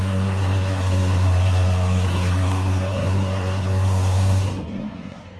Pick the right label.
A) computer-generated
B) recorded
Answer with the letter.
A